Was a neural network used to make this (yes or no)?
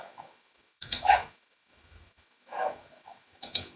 yes